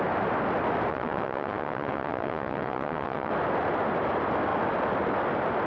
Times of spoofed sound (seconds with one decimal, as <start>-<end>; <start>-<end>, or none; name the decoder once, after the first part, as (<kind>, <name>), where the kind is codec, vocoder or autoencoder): 0.9-3.3 (vocoder, WaveNeXt)